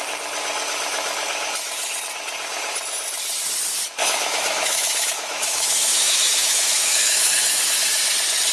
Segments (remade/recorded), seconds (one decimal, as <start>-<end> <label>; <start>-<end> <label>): 0.0-4.0 recorded; 4.0-7.6 remade; 7.6-8.5 recorded